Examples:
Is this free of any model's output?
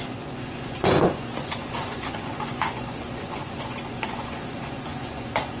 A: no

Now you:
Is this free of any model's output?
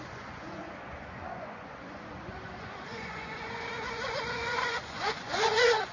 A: no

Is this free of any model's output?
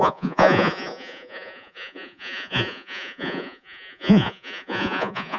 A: no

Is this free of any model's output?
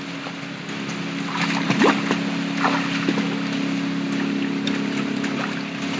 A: yes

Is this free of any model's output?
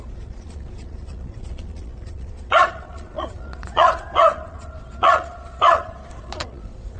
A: no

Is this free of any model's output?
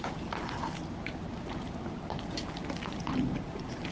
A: yes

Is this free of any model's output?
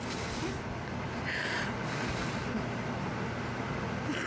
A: yes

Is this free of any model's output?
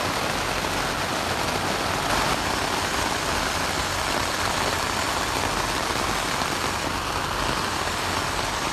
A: yes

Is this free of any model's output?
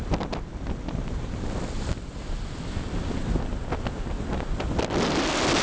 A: yes